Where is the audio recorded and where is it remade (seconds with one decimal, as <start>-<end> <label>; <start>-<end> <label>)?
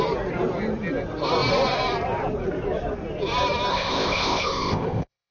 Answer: 0.0-3.7 recorded; 3.7-5.3 remade